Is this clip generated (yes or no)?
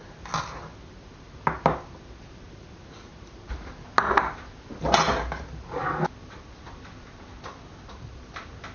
no